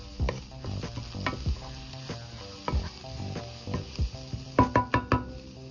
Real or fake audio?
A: real